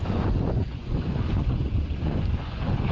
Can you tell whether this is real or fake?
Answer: fake